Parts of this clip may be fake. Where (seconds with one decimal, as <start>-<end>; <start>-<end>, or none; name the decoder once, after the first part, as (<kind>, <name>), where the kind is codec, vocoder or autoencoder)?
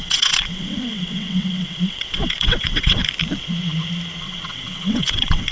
0.0-3.0 (vocoder, WaveNeXt); 4.2-5.5